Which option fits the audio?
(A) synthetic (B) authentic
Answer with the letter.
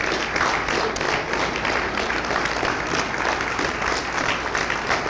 B